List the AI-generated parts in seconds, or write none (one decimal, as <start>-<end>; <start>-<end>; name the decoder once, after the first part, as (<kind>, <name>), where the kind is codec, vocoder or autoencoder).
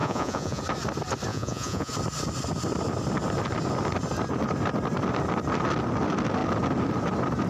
0.0-0.6 (vocoder, Vocos); 1.3-1.9